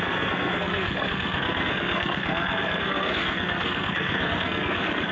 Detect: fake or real fake